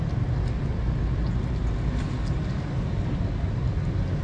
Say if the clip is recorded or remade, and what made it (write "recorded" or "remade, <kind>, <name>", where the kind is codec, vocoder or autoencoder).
recorded